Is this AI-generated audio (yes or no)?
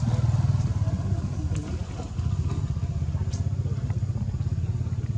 no